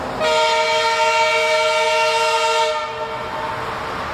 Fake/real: real